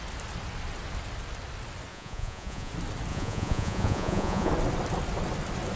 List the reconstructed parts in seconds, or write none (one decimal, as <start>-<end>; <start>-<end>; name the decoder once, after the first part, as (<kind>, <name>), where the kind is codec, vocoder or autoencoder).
1.9-2.7 (vocoder, Vocos); 3.1-4.5

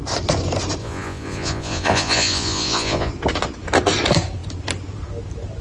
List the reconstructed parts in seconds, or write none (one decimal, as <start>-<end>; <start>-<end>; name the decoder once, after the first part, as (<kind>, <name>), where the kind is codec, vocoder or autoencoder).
0.8-3.1 (vocoder, Vocos)

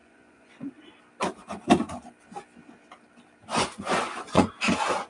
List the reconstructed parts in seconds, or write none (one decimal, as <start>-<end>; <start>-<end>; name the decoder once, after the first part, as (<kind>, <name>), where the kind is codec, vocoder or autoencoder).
0.0-0.7 (vocoder, Vocos); 3.4-4.5